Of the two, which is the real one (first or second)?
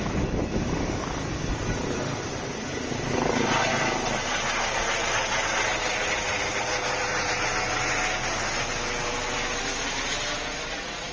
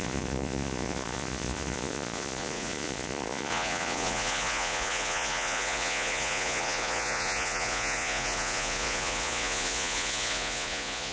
first